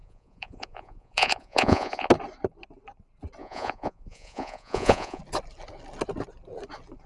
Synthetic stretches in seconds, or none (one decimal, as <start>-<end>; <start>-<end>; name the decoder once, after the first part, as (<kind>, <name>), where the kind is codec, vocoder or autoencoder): 0.0-2.1 (vocoder, Vocos); 3.4-5.2